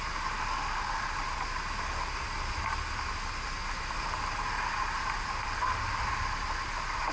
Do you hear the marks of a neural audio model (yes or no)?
no